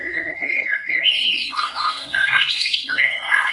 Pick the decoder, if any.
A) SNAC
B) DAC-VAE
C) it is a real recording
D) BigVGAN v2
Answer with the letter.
A